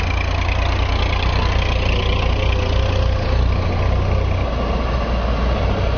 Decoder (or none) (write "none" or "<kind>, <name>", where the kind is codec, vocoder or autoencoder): none